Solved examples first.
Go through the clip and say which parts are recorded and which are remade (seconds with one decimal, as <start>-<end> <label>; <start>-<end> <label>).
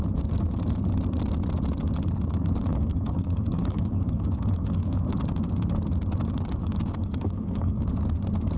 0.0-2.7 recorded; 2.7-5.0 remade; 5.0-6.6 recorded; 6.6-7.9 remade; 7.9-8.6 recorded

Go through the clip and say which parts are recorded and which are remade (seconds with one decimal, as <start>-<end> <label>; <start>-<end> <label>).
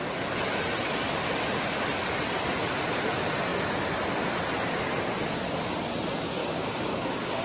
0.0-6.4 recorded; 6.4-7.4 remade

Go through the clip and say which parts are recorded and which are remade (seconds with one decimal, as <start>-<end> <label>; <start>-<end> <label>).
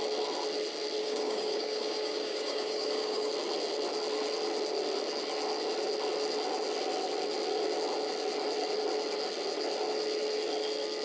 0.0-1.0 recorded; 1.0-3.3 remade; 3.3-11.0 recorded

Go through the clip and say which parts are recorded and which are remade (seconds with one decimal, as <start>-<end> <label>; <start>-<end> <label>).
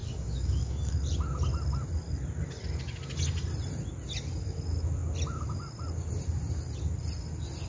0.0-0.9 remade; 0.9-7.7 recorded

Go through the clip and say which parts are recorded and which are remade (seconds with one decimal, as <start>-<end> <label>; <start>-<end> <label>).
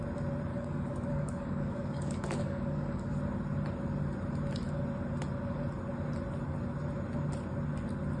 0.0-0.5 recorded; 0.5-3.2 remade; 3.2-8.2 recorded